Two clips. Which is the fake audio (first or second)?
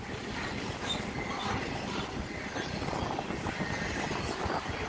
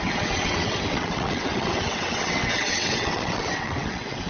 second